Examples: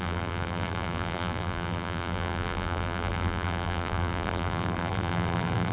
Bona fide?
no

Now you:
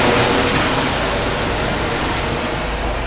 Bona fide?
yes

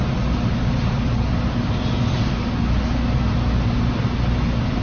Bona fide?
yes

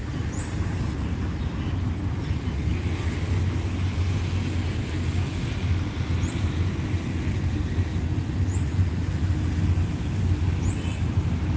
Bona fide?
yes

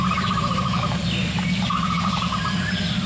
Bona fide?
no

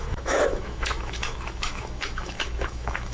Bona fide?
no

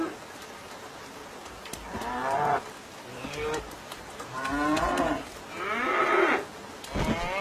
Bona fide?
yes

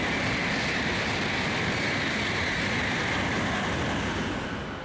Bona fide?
yes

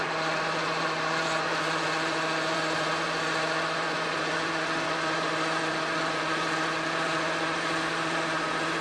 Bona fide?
no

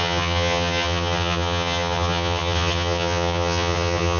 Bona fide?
no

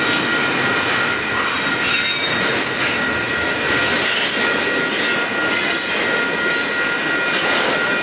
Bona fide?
yes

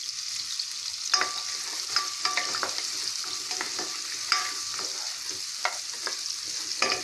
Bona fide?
yes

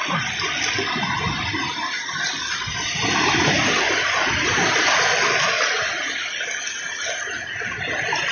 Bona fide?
yes